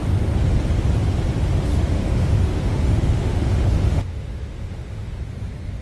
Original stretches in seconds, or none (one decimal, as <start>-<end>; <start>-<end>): 0.0-1.7; 5.2-5.8